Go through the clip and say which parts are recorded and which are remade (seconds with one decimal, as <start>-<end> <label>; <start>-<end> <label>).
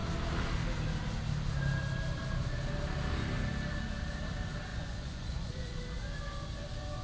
0.0-4.7 recorded; 4.7-5.8 remade; 5.8-7.0 recorded